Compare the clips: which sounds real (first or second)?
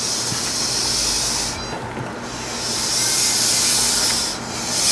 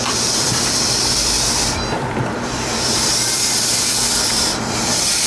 first